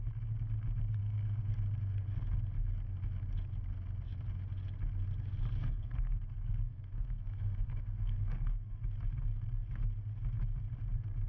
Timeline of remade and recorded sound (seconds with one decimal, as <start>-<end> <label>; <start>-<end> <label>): 0.0-1.0 recorded; 1.0-1.5 remade; 1.5-5.6 recorded; 5.6-8.8 remade; 8.8-11.3 recorded